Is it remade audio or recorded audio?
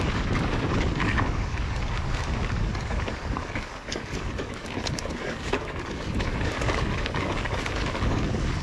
remade